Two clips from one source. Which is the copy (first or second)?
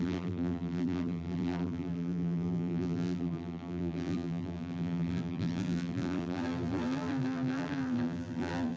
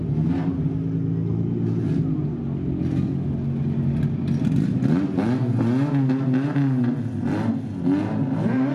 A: first